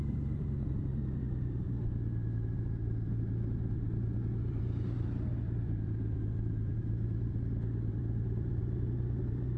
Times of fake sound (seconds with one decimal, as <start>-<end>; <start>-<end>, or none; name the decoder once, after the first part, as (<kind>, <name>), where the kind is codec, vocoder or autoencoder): 0.0-9.6 (vocoder, BigVGAN v2)

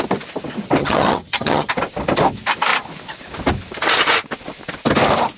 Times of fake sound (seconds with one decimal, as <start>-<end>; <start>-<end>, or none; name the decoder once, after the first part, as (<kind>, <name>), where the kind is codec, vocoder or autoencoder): 0.8-1.7 (vocoder, HiFi-GAN)

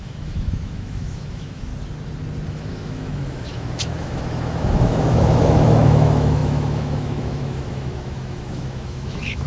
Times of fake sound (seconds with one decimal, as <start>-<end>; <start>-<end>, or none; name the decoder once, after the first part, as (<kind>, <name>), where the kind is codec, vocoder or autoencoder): 0.0-1.7 (autoencoder, DAC-VAE); 2.5-9.5

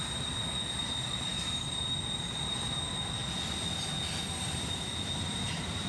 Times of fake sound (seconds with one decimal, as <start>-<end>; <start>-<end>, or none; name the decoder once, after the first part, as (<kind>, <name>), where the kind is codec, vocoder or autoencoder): 0.0-3.2 (vocoder, BigVGAN v2); 4.4-5.9

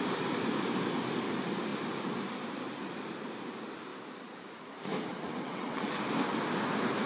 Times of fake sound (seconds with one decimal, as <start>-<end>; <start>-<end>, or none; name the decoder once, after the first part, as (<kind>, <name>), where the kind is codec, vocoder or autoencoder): 5.1-6.0 (vocoder, WaveNeXt)

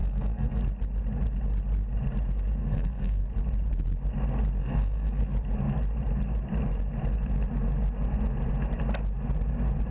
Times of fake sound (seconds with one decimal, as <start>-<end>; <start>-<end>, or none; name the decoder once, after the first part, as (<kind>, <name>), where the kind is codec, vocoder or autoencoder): 0.0-0.6 (codec, SNAC); 2.6-3.2; 4.6-5.2

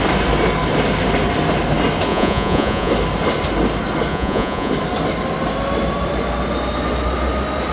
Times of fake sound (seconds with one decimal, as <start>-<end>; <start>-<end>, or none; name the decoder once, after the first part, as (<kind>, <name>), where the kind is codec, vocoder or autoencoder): 2.1-2.9 (vocoder, Vocos); 4.1-4.7

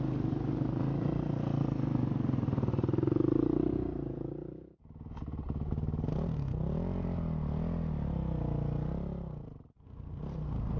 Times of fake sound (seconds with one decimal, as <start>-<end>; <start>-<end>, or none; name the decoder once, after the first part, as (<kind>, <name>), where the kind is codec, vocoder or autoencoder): none